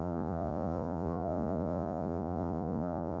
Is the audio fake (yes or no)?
yes